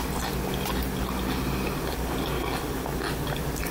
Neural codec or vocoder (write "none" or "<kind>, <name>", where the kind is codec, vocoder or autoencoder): none